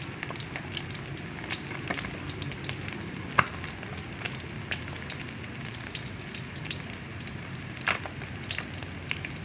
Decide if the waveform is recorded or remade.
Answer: recorded